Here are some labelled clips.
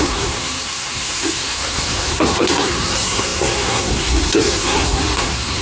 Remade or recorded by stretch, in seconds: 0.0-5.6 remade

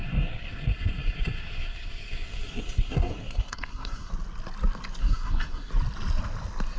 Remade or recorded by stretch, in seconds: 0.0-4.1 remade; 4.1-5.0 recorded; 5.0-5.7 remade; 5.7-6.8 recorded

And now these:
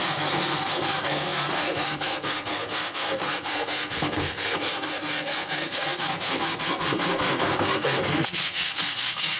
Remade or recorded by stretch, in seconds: 0.0-9.4 remade

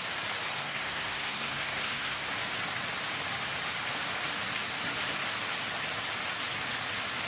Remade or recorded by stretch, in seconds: 0.0-0.6 recorded; 0.6-2.3 remade; 2.3-7.3 recorded

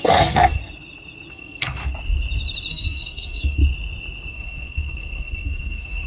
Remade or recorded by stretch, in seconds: 0.0-0.6 remade; 0.6-1.3 recorded; 1.3-1.8 remade; 1.8-2.7 recorded; 2.7-3.6 remade; 3.6-4.3 recorded; 4.3-6.1 remade

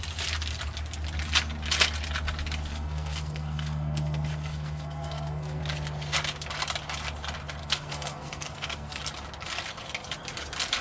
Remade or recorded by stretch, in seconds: 0.0-2.7 recorded; 2.7-5.6 remade; 5.6-7.6 recorded; 7.6-9.0 remade; 9.0-10.8 recorded

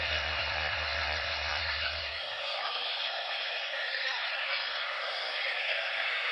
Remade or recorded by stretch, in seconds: 0.0-6.3 remade